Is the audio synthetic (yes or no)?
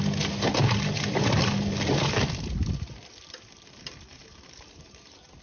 no